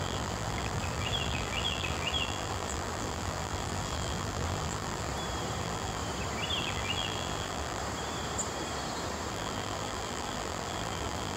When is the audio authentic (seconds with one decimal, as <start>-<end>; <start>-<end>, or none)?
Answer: 5.1-5.6; 6.0-6.6; 7.8-9.3